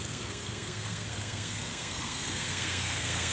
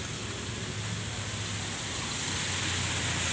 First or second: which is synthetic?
first